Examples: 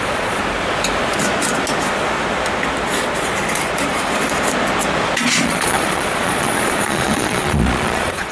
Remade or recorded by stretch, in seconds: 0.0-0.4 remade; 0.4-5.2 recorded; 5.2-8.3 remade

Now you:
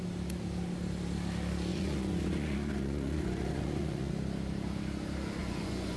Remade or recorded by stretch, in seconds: 0.0-1.7 recorded; 1.7-4.1 remade; 4.1-5.4 recorded; 5.4-6.0 remade

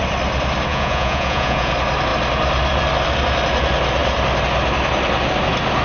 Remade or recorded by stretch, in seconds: 0.0-0.7 recorded; 0.7-1.7 remade; 1.7-5.8 recorded

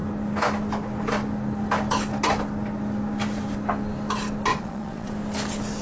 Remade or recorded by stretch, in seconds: 0.0-4.5 recorded; 4.5-5.1 remade; 5.1-5.8 recorded

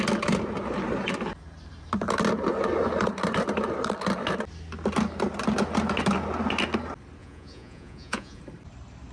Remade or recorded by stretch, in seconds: 0.0-7.2 recorded; 7.2-8.4 remade; 8.4-9.1 recorded